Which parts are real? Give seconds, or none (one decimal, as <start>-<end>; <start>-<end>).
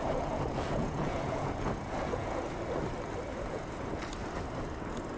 2.4-3.3; 4.0-5.2